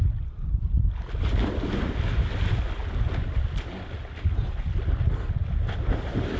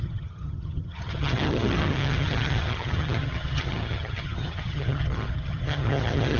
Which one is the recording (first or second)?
first